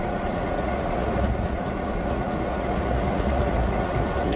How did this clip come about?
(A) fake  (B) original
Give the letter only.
A